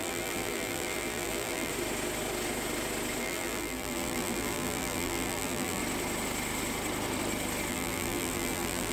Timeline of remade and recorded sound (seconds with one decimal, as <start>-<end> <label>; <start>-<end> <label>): 0.0-1.7 remade; 1.7-3.2 recorded; 3.2-5.8 remade; 5.8-7.7 recorded; 7.7-8.9 remade